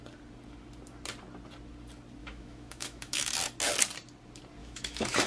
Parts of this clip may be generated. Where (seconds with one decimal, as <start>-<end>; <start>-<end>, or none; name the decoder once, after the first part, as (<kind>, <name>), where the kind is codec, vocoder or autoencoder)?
2.2-3.3 (autoencoder, DAC-VAE); 4.6-5.3